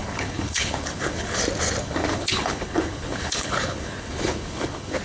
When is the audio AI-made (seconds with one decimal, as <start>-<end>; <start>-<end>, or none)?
0.0-1.4; 1.8-5.0